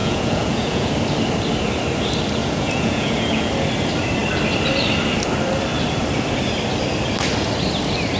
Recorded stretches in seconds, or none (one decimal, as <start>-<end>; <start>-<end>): 0.9-2.4; 3.5-8.2